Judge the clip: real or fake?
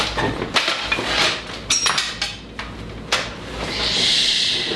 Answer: real